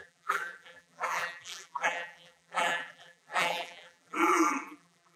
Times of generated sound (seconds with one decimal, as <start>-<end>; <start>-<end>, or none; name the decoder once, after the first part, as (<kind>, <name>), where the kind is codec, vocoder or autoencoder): 0.0-5.2 (vocoder, BigVGAN v2)